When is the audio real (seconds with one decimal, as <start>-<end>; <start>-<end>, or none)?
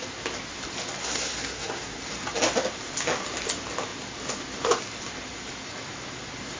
0.0-1.0; 2.0-6.6